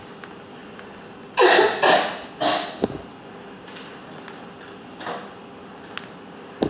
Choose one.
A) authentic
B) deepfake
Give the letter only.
A